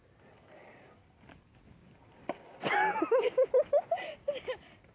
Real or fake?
real